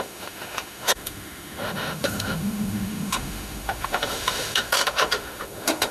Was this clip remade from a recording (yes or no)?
yes